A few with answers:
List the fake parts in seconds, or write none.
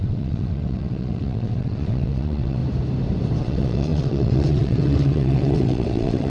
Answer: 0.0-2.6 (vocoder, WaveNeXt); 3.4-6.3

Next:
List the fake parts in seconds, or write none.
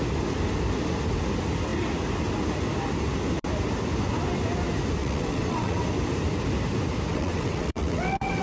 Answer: 5.0-5.8 (vocoder, WaveNeXt); 7.1-8.4